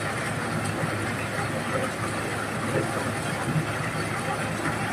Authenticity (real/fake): real